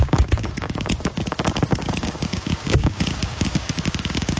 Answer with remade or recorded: remade